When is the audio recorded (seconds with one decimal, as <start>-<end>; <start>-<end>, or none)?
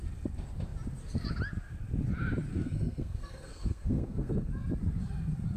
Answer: 0.0-2.5; 4.5-5.6